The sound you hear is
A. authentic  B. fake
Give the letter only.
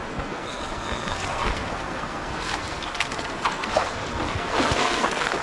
B